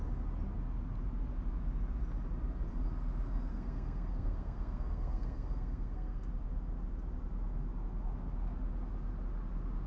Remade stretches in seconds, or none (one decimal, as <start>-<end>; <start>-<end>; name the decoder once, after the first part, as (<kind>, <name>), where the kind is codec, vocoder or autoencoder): 3.5-6.3 (codec, SNAC)